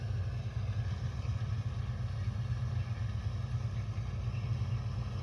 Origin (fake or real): real